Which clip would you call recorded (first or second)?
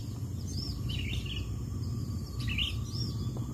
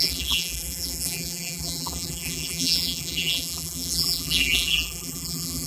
first